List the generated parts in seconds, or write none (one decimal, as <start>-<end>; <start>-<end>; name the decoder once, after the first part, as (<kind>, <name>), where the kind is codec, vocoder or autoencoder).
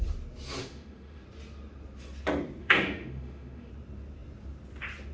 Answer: 0.6-1.2 (autoencoder, DAC-VAE); 2.6-3.7